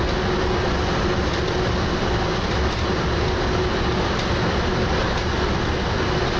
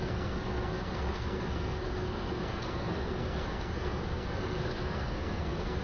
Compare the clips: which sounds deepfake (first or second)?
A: second